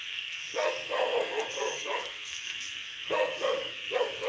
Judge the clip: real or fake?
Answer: fake